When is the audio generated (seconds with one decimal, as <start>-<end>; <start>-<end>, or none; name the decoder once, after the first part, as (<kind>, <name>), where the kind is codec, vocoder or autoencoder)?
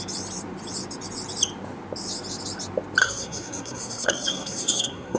3.0-5.2 (codec, SNAC)